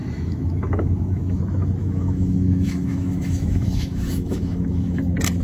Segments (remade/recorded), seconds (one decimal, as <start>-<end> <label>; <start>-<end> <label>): 0.0-1.4 remade; 1.4-1.8 recorded; 1.8-5.0 remade; 5.0-5.4 recorded

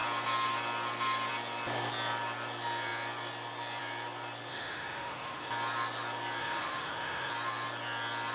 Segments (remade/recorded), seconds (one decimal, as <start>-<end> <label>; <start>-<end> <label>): 0.0-4.5 recorded; 4.5-5.5 remade; 5.5-6.4 recorded; 6.4-7.3 remade; 7.3-8.3 recorded

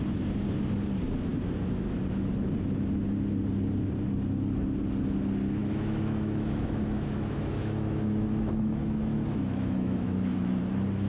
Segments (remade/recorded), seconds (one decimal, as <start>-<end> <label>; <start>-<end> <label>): 0.0-5.6 recorded; 5.6-10.6 remade; 10.6-11.1 recorded

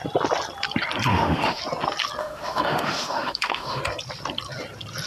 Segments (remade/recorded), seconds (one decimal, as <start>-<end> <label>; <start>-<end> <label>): 0.0-1.1 recorded; 1.1-1.6 remade; 1.6-2.2 recorded; 2.2-3.8 remade; 3.8-5.1 recorded

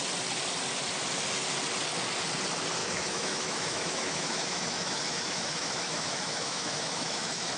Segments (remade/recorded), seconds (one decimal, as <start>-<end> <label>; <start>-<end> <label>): 0.0-2.8 recorded; 2.8-7.6 remade

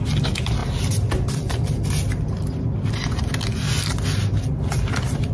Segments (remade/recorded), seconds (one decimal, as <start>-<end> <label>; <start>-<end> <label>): 0.0-5.3 recorded